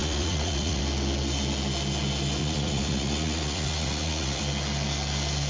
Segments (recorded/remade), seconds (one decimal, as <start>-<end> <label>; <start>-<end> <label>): 0.0-0.8 remade; 0.8-2.4 recorded; 2.4-4.4 remade; 4.4-5.5 recorded